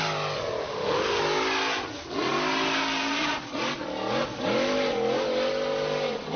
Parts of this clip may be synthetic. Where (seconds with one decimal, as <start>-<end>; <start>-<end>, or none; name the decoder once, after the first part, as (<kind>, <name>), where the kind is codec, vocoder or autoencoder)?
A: 0.6-1.2 (autoencoder, DAC-VAE)